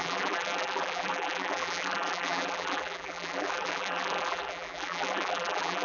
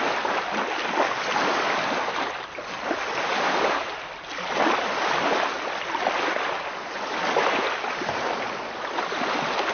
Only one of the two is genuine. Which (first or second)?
second